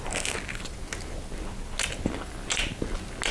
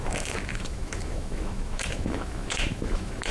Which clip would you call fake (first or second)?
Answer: second